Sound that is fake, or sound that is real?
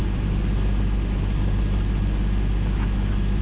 real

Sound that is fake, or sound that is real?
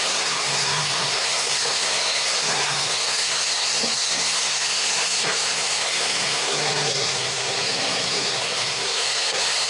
fake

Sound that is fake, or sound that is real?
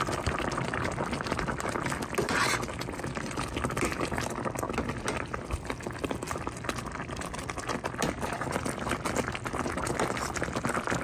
real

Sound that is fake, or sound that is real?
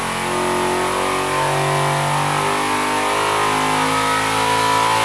real